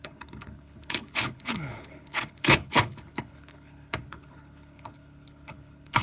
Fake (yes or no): yes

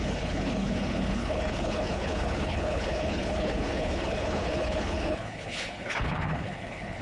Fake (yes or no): yes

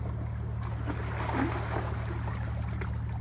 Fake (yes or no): no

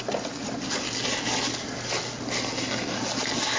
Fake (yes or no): no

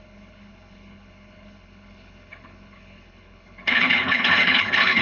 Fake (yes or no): yes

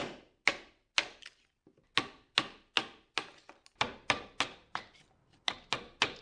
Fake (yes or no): no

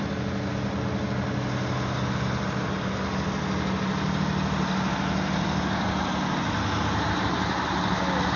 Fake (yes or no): no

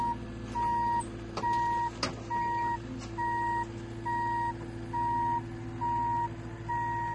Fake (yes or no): no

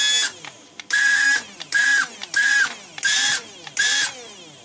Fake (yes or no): no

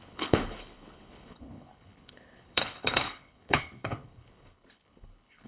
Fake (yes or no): yes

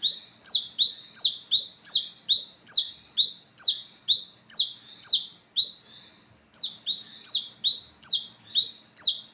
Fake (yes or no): no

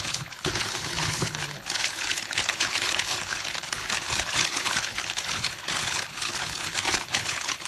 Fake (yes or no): yes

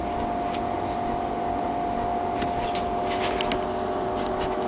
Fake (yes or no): no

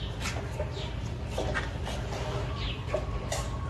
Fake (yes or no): no